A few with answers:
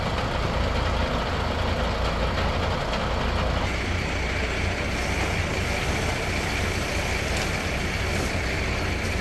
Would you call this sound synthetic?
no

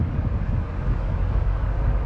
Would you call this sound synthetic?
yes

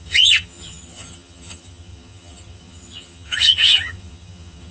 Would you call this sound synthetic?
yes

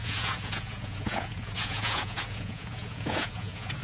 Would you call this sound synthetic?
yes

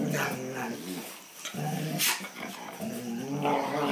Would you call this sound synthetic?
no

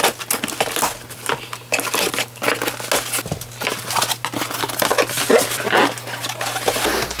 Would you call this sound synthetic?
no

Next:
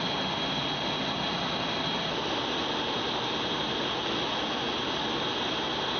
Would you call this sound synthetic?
no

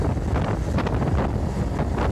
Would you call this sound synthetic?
no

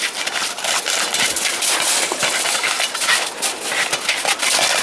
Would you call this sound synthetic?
no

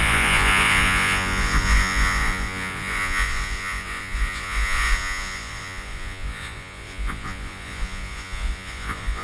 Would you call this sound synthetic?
yes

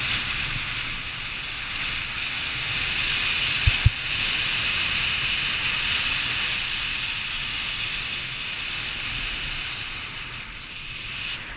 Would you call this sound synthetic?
no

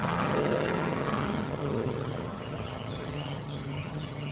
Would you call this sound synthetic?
yes